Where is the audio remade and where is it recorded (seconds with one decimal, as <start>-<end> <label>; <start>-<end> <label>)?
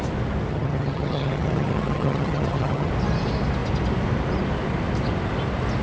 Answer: 0.0-0.5 recorded; 0.5-2.9 remade; 2.9-5.8 recorded